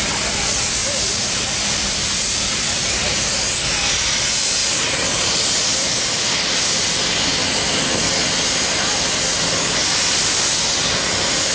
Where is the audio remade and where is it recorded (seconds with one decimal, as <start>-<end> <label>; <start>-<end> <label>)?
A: 0.0-0.8 recorded; 0.8-2.9 remade; 2.9-4.6 recorded; 4.6-6.0 remade; 6.0-11.5 recorded